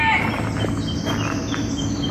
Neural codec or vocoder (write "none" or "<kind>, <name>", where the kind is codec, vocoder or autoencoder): none